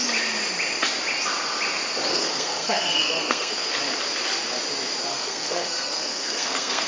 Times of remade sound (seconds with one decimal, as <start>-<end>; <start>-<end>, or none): 2.1-3.7; 5.1-6.9